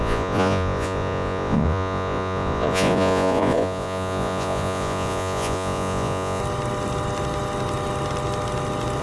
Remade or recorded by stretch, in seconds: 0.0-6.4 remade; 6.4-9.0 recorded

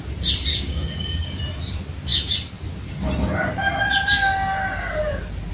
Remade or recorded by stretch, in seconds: 0.0-0.5 recorded; 0.5-1.4 remade; 1.4-5.5 recorded

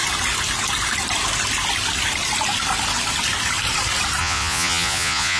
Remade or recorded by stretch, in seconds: 0.0-4.2 recorded; 4.2-5.4 remade

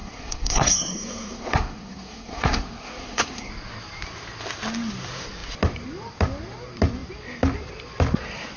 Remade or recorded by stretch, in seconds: 0.0-3.5 remade; 3.5-8.6 recorded

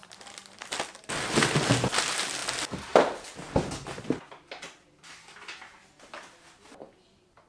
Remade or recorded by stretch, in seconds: 0.0-7.5 recorded